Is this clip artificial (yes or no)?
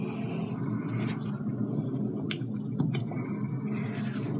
no